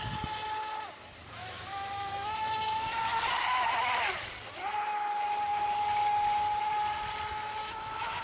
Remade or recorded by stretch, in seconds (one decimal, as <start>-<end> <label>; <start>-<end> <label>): 0.0-1.4 recorded; 1.4-3.0 remade; 3.0-7.6 recorded; 7.6-8.2 remade